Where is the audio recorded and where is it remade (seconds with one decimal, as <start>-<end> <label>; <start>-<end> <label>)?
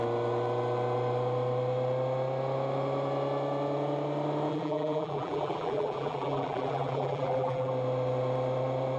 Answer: 0.0-4.5 recorded; 4.5-7.7 remade; 7.7-9.0 recorded